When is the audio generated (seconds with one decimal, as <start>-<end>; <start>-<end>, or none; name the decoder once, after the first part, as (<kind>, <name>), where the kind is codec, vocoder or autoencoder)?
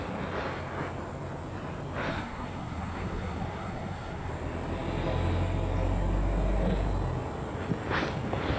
2.1-4.3 (codec, SNAC)